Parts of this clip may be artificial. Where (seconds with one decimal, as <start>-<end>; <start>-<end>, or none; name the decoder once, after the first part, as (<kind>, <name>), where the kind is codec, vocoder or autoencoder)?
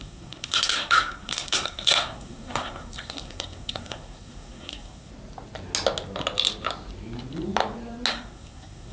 0.0-5.1 (codec, SNAC); 8.1-8.9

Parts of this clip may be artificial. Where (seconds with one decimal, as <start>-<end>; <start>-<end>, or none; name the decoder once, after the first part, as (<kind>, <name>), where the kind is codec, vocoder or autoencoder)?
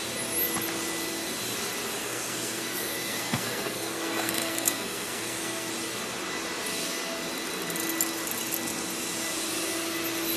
2.0-5.7 (codec, SNAC)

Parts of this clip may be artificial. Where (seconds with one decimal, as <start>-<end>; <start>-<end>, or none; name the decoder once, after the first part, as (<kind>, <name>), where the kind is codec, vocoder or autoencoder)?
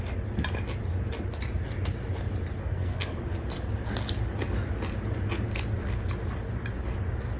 2.6-3.2 (codec, SNAC)